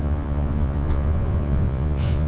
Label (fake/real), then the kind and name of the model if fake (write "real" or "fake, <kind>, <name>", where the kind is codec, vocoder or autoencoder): fake, vocoder, Vocos